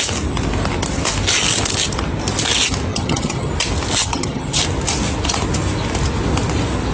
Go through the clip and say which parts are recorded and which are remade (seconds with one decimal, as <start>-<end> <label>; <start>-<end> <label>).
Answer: 0.0-2.9 recorded; 2.9-3.5 remade; 3.5-4.0 recorded; 4.0-4.6 remade; 4.6-6.9 recorded